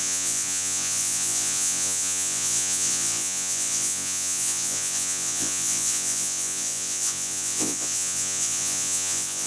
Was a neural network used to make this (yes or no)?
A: yes